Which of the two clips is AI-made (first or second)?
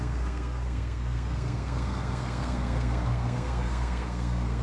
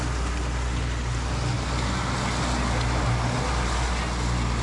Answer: first